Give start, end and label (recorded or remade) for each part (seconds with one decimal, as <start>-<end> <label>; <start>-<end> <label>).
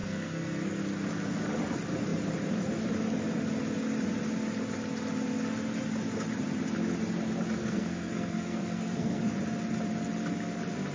0.0-0.8 remade; 0.8-7.6 recorded; 7.6-9.3 remade; 9.3-10.9 recorded